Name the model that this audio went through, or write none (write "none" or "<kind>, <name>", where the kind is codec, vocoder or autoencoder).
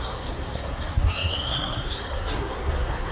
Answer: codec, SNAC